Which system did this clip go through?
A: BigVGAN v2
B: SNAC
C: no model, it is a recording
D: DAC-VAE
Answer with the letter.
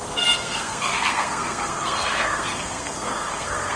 B